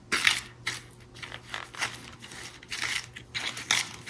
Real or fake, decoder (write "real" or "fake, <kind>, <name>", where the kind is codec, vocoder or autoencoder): real